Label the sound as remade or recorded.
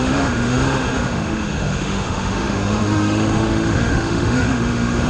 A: remade